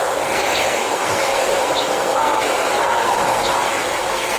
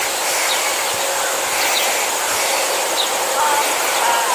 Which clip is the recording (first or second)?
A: second